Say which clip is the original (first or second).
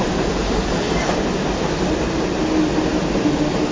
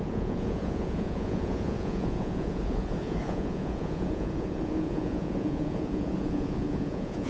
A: first